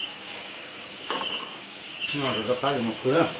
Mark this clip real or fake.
fake